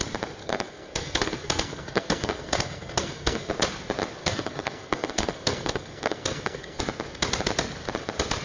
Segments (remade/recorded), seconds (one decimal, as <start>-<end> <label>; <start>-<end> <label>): 0.0-0.4 recorded; 0.4-3.5 remade; 3.5-4.2 recorded; 4.2-6.8 remade; 6.8-8.4 recorded